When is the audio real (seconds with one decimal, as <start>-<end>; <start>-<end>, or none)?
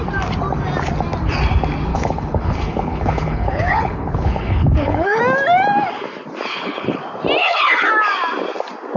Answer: 0.0-1.9; 5.2-6.5; 7.0-7.4; 7.9-9.0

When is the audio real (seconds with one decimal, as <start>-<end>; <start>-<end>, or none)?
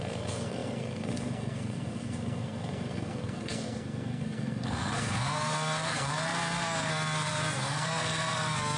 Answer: none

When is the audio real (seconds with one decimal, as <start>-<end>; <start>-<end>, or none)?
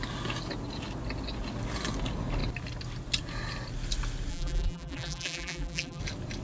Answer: 0.0-4.3; 6.0-6.4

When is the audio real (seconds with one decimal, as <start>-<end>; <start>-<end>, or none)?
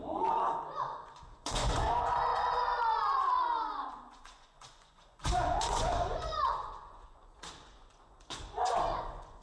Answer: none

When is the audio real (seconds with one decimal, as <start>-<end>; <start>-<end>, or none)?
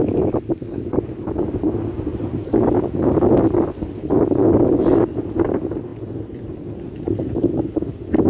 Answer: 0.0-8.3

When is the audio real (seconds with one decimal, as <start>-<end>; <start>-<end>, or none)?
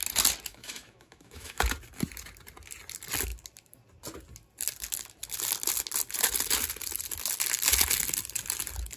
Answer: 0.0-0.5; 1.6-9.0